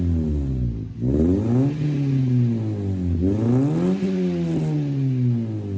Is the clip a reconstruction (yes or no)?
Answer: no